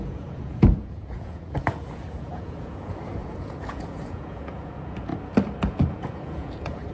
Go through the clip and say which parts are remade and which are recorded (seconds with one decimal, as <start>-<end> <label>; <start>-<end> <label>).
0.0-5.1 remade; 5.1-5.9 recorded; 5.9-6.9 remade